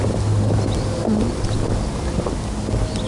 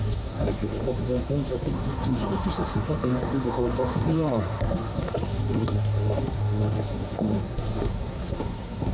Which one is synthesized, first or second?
second